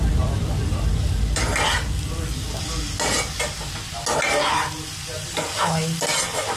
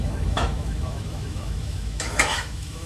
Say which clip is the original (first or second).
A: first